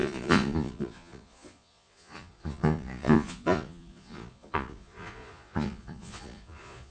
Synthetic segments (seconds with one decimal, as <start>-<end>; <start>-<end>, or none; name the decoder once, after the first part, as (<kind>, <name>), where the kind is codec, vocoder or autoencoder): 0.0-6.9 (vocoder, Vocos)